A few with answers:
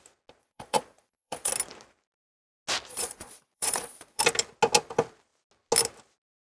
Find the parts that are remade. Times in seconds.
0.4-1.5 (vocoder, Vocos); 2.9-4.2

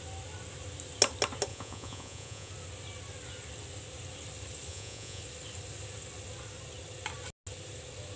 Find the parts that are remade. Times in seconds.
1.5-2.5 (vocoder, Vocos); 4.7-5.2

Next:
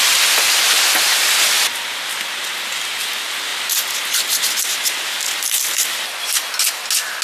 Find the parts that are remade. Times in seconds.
none

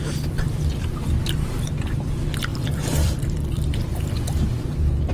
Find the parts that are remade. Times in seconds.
0.0-3.9 (vocoder, BigVGAN v2)